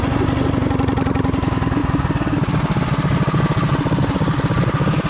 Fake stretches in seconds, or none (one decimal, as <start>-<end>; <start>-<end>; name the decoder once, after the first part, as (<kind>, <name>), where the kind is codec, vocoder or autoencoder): none